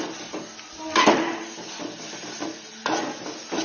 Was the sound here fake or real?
real